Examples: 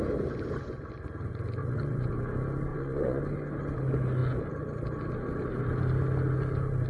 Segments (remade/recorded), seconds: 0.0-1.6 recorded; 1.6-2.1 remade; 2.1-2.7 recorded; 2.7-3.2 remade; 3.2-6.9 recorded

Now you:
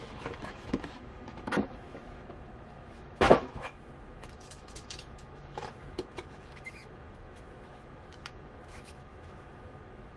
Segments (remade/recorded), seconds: 0.0-10.2 remade